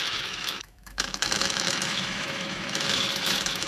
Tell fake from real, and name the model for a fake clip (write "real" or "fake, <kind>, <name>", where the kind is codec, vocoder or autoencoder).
fake, autoencoder, DAC-VAE